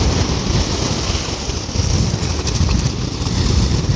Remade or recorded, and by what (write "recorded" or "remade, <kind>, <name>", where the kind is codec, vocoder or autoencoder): recorded